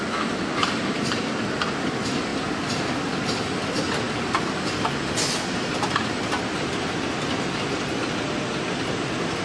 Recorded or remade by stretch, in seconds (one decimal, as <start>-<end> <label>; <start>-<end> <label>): 0.0-9.4 recorded